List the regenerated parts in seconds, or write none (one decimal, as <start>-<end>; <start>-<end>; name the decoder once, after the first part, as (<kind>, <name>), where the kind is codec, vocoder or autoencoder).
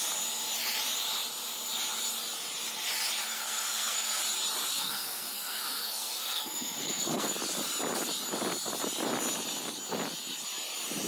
3.3-4.2 (codec, SNAC); 4.7-7.3